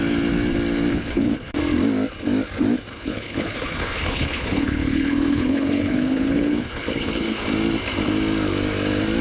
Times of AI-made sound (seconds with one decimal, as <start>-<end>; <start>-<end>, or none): 0.9-1.6; 2.9-7.4